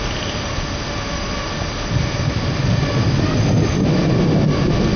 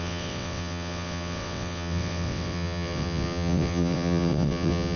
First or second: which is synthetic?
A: second